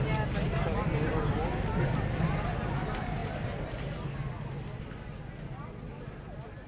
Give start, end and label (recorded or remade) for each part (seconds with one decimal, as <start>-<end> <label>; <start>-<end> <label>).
0.0-6.7 recorded